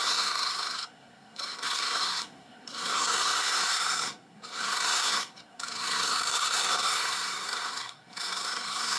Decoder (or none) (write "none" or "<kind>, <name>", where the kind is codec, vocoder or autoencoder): codec, SNAC